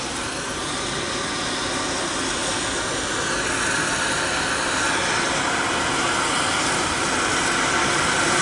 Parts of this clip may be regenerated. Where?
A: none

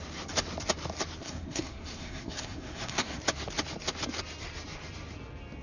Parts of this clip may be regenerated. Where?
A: 1.2-3.2 (codec, SNAC)

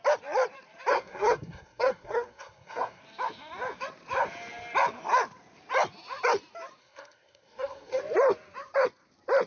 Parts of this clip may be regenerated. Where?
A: 0.9-3.0 (codec, SNAC); 6.8-8.0